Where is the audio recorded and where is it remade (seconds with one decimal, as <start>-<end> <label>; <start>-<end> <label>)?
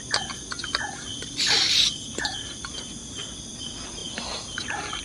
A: 0.0-3.0 recorded; 3.0-3.6 remade; 3.6-4.0 recorded; 4.0-5.0 remade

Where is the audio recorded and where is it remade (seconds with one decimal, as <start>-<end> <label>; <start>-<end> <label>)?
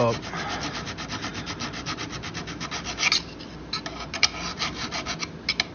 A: 0.0-4.5 recorded; 4.5-5.1 remade; 5.1-5.7 recorded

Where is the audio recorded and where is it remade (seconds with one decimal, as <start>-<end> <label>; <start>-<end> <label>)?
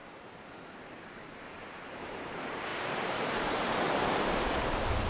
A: 0.0-1.0 recorded; 1.0-5.1 remade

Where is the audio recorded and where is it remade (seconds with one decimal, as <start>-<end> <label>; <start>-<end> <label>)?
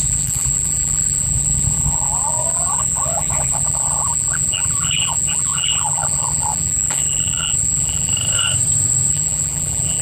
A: 0.0-8.1 remade; 8.1-9.1 recorded; 9.1-10.0 remade